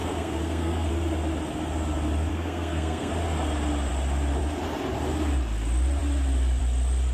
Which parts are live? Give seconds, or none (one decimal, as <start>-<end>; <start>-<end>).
0.9-2.3; 3.1-7.1